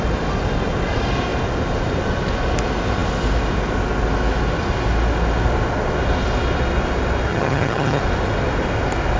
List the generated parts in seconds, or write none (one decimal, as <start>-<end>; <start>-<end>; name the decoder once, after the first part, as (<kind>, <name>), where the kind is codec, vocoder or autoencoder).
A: 7.3-8.0 (vocoder, HiFi-GAN)